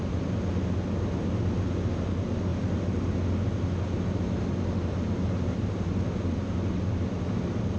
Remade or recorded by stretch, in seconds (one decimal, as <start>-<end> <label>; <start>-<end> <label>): 0.0-7.8 recorded